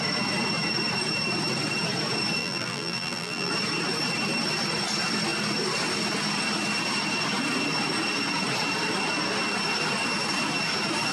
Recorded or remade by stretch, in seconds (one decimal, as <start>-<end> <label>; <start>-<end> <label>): 0.0-2.4 recorded; 2.4-3.5 remade; 3.5-11.1 recorded